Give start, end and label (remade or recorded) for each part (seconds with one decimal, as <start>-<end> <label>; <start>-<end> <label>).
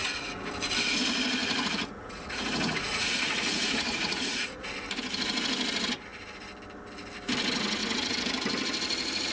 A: 0.0-0.5 remade; 0.5-1.4 recorded; 1.4-4.7 remade; 4.7-9.3 recorded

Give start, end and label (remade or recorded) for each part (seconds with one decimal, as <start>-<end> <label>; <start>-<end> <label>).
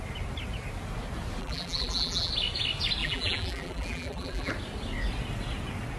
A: 0.0-1.4 recorded; 1.4-2.3 remade; 2.3-3.0 recorded; 3.0-4.5 remade; 4.5-6.0 recorded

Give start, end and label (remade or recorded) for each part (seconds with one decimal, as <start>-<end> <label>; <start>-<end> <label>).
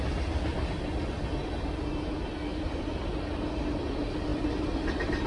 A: 0.0-5.3 recorded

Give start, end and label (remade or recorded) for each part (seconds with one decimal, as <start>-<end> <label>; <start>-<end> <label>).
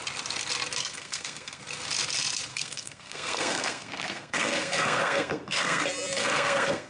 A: 0.0-0.8 recorded; 0.8-1.6 remade; 1.6-2.5 recorded; 2.5-5.8 remade; 5.8-6.2 recorded; 6.2-6.9 remade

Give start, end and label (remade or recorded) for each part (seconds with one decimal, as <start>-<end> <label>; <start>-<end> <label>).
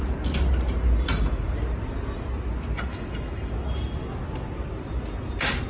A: 0.0-2.9 recorded; 2.9-3.5 remade; 3.5-5.7 recorded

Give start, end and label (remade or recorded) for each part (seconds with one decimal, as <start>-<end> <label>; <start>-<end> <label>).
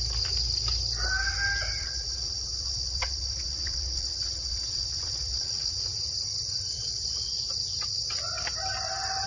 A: 0.0-1.8 recorded; 1.8-5.7 remade; 5.7-6.7 recorded; 6.7-7.3 remade; 7.3-9.3 recorded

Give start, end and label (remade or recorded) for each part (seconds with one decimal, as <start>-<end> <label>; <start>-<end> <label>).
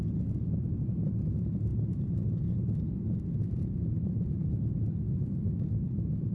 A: 0.0-6.3 recorded